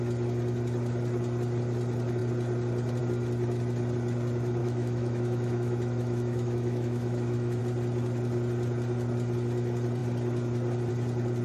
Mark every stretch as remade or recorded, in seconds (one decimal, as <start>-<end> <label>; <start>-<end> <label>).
0.0-4.6 recorded; 4.6-7.6 remade; 7.6-11.4 recorded